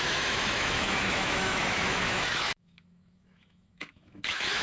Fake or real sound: fake